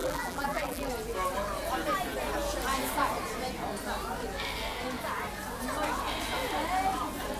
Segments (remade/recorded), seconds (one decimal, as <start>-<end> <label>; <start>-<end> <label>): 0.0-0.9 remade; 0.9-7.4 recorded